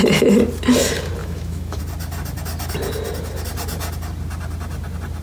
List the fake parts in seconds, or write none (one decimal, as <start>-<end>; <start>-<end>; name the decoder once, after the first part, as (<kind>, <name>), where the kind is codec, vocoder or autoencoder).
1.2-1.8 (autoencoder, DAC-VAE)